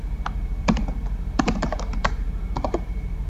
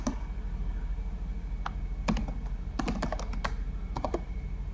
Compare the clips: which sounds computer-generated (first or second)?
first